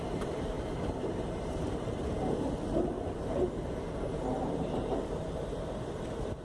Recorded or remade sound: remade